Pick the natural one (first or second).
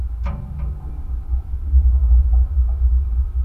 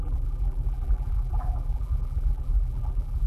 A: first